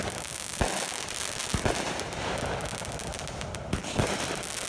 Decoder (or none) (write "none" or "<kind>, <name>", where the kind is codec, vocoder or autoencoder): none